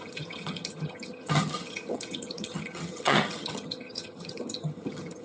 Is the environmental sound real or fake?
fake